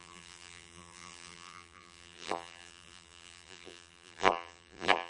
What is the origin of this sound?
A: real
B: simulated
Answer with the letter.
B